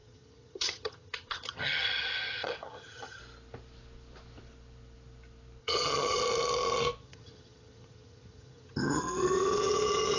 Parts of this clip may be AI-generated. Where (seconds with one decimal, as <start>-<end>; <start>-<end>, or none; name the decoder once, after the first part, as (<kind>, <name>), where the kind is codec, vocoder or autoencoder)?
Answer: 0.0-3.2 (vocoder, HiFi-GAN); 5.6-6.2; 7.0-9.0